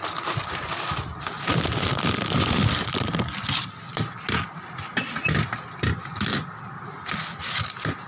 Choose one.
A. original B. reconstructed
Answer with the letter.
A